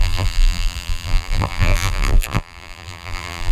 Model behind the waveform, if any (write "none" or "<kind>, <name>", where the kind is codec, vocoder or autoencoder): vocoder, BigVGAN v2